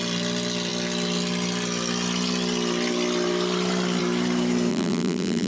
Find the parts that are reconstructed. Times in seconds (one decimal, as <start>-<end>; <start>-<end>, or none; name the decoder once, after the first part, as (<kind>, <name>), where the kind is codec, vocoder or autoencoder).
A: 4.7-5.5 (vocoder, BigVGAN v2)